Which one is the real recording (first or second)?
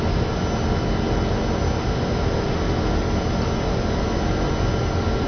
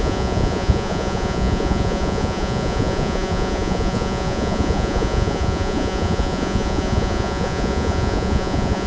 first